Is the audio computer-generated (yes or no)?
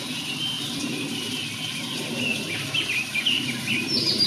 no